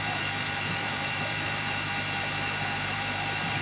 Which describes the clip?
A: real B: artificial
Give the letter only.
B